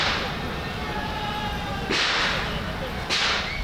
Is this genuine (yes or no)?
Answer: yes